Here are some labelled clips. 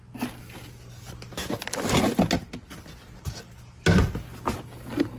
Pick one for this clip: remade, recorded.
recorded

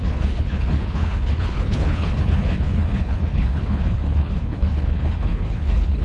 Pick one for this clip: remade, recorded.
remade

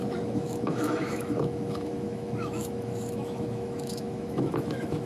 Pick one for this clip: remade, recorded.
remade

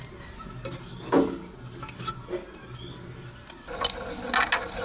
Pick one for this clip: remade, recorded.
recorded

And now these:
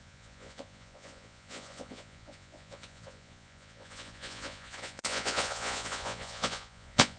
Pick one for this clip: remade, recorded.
remade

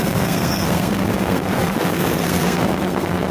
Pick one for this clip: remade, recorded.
remade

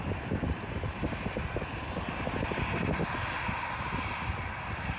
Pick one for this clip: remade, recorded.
recorded